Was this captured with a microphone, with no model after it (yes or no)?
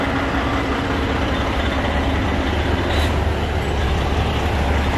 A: yes